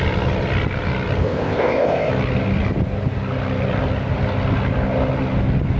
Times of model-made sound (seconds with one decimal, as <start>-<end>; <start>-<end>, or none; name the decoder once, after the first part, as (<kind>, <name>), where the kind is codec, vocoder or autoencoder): 1.2-2.1 (codec, ZipCodec)